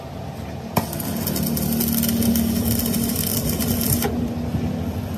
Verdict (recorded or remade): recorded